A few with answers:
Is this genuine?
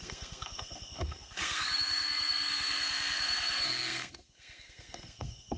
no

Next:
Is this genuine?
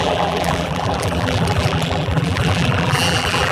no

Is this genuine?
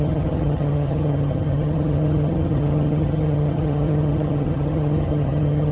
no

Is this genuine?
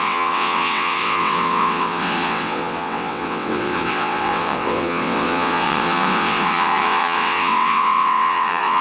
no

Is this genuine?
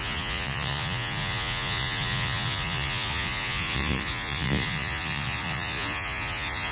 no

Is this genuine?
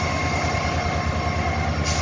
yes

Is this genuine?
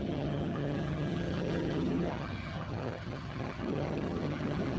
no